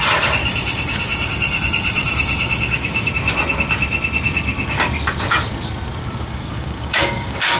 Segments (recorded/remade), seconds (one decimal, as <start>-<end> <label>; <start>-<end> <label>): 0.0-0.4 recorded; 0.4-3.1 remade; 3.1-6.0 recorded; 6.0-7.6 remade